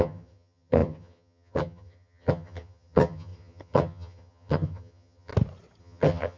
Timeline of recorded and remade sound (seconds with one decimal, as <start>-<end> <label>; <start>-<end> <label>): 0.0-5.3 remade; 5.3-5.8 recorded; 5.8-6.4 remade